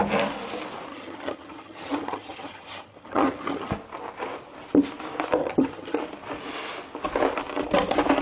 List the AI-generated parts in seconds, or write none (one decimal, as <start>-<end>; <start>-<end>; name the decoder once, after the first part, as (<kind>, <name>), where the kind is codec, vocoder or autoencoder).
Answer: 0.9-3.7 (vocoder, HiFi-GAN); 5.4-6.0